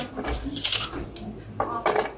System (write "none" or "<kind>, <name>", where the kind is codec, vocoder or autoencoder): none